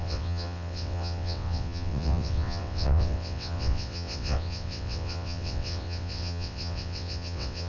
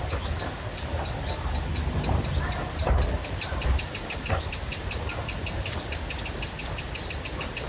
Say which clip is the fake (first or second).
first